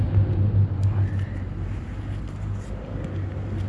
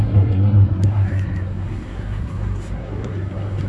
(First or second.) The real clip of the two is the first